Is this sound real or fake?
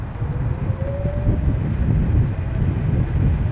real